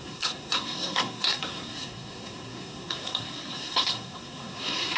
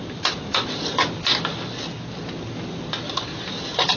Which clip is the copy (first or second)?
first